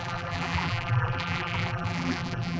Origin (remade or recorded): remade